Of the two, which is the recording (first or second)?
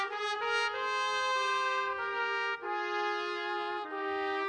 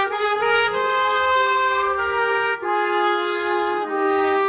first